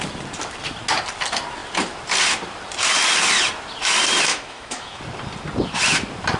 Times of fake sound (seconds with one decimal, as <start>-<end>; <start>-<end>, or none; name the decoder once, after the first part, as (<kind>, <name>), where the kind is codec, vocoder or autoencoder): 4.3-5.0 (autoencoder, DAC-VAE)